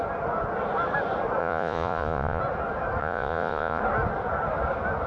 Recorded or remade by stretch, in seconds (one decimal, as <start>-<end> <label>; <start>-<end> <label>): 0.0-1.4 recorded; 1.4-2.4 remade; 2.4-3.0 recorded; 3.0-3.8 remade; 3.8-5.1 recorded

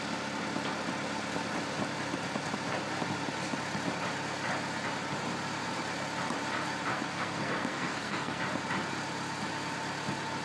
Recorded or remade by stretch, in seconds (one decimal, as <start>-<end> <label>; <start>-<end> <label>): 0.0-6.9 recorded; 6.9-8.4 remade; 8.4-10.4 recorded

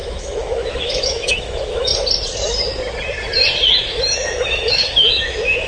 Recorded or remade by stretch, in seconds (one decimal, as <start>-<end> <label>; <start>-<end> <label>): 0.0-1.9 remade; 1.9-3.7 recorded; 3.7-5.7 remade

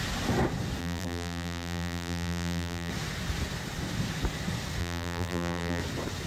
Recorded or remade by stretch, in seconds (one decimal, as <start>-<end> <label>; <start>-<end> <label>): 0.0-0.8 recorded; 0.8-2.9 remade; 2.9-4.8 recorded; 4.8-5.8 remade; 5.8-6.3 recorded

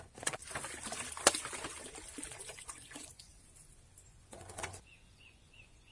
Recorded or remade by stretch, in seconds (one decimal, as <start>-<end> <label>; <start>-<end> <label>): 0.0-0.4 remade; 0.4-2.3 recorded; 2.3-3.3 remade; 3.3-4.0 recorded; 4.0-5.9 remade